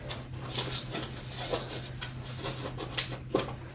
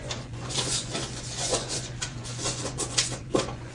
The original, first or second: first